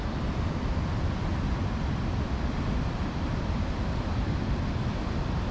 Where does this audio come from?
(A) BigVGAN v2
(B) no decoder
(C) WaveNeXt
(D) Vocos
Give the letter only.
B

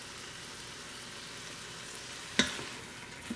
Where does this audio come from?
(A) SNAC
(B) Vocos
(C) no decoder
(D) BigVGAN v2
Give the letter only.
C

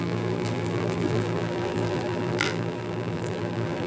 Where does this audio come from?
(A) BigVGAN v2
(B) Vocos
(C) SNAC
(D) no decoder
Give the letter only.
A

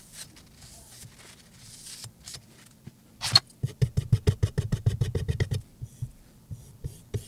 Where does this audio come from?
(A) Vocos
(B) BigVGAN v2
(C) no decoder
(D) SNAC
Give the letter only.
C